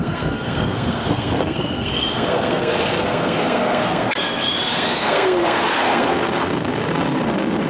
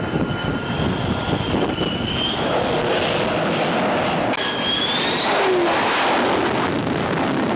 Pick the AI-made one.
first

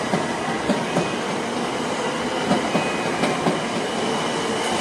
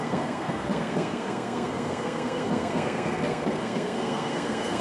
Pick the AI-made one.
second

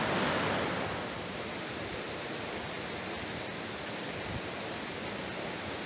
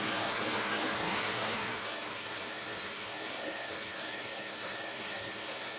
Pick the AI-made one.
second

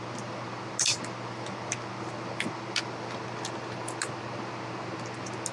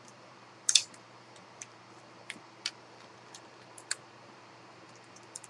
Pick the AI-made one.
second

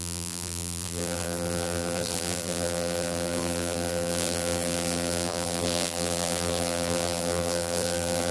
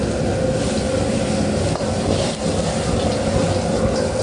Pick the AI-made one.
first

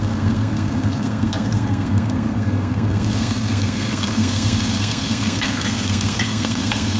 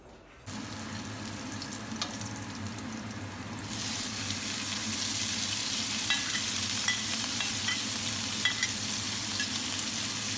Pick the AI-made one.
first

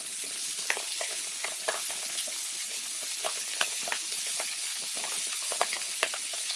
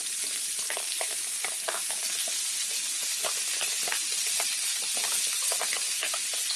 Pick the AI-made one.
first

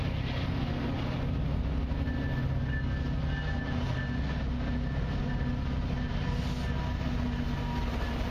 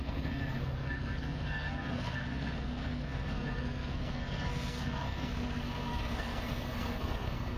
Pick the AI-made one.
second